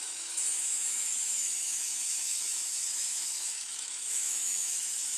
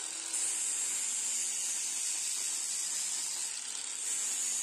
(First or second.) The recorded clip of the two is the second